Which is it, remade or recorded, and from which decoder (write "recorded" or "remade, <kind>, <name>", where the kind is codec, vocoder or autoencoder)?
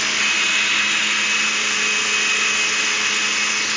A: recorded